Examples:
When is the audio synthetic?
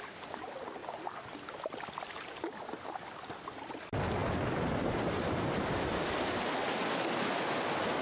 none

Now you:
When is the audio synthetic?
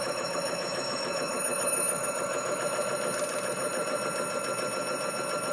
0.0-2.6 (autoencoder, DAC-VAE)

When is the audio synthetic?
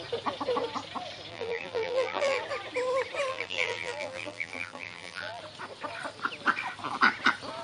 1.3-2.4 (vocoder, BigVGAN v2); 3.3-5.4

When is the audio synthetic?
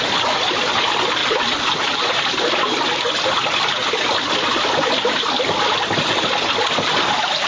none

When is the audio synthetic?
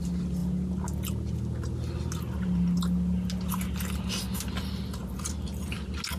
none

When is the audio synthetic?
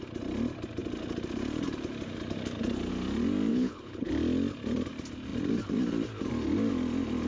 3.5-4.1 (codec, HILCodec)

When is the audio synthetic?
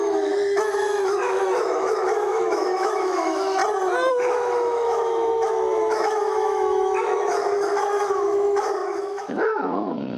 0.0-3.6 (autoencoder, DAC-VAE); 4.1-10.2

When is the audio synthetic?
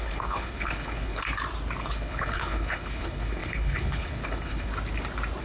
0.0-1.2 (codec, HILCodec); 1.8-4.7